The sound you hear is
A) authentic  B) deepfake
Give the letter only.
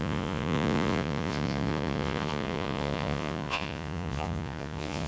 B